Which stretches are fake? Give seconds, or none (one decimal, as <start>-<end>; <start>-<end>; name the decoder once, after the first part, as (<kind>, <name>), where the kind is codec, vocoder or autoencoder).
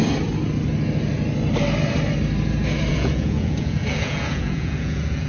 2.9-5.3 (vocoder, Vocos)